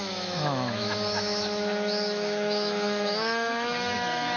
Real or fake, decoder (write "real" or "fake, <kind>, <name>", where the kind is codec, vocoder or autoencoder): fake, autoencoder, DAC-VAE